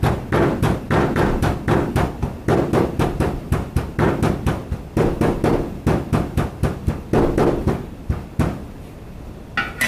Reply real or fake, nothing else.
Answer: real